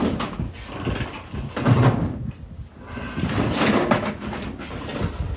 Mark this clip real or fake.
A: real